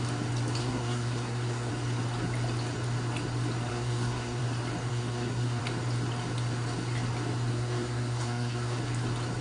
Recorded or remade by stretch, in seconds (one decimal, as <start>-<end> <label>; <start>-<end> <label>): 0.0-0.6 recorded; 0.6-1.7 remade; 1.7-3.7 recorded; 3.7-4.4 remade; 4.4-4.9 recorded; 4.9-5.6 remade; 5.6-7.5 recorded; 7.5-8.8 remade; 8.8-9.4 recorded